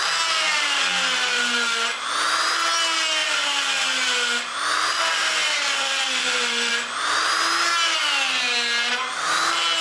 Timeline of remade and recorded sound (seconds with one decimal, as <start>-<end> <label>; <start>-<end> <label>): 0.0-3.2 recorded; 3.2-3.8 remade; 3.8-5.4 recorded; 5.4-6.7 remade; 6.7-9.8 recorded